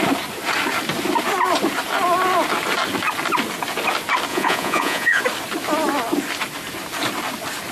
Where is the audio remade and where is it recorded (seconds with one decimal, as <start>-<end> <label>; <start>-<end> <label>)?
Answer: 0.0-4.3 recorded; 4.3-5.2 remade; 5.2-7.7 recorded